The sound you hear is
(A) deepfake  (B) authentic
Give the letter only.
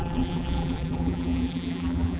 A